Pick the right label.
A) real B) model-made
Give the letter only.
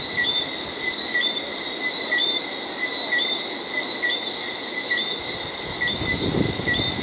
A